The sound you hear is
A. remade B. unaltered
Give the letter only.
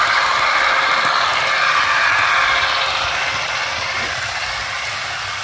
B